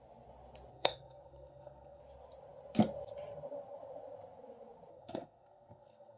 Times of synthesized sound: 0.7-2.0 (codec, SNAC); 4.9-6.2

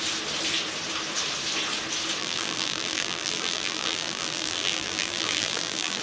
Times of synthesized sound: 2.2-6.0 (vocoder, BigVGAN v2)